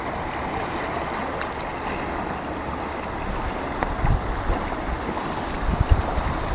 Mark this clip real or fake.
real